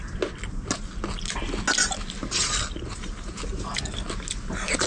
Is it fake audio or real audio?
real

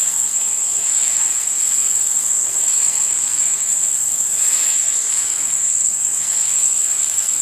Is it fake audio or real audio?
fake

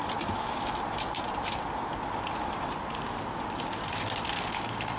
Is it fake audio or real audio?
fake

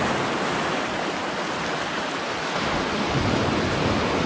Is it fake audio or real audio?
real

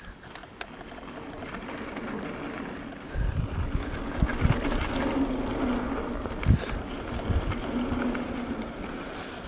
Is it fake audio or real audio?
real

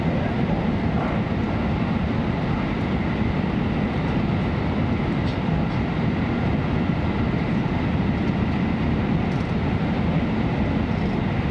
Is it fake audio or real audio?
real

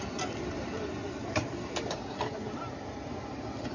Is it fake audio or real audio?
real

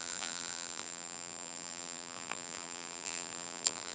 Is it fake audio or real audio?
fake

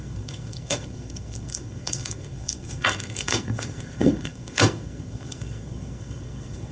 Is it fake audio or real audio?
fake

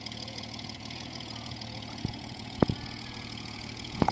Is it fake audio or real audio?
fake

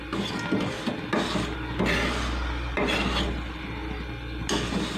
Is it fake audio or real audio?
real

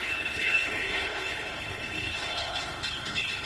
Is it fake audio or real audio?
fake